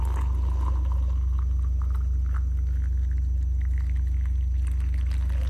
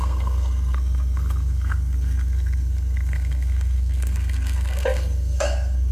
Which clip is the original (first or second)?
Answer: first